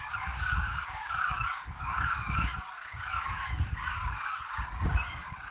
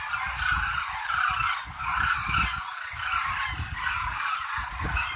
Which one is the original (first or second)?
second